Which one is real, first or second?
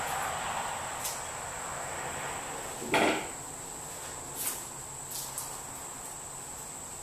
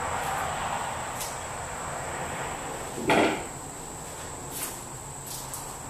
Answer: first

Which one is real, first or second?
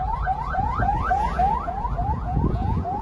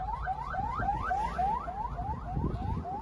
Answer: second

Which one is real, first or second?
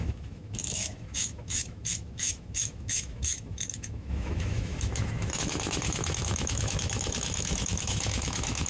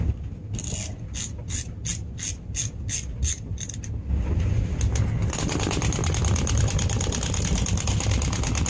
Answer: second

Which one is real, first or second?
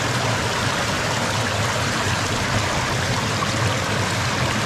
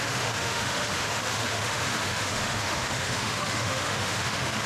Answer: first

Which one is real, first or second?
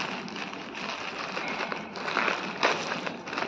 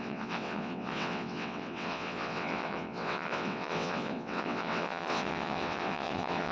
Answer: first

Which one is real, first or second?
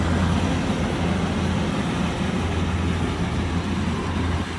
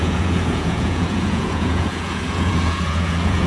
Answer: first